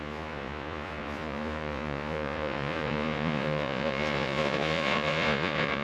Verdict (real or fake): fake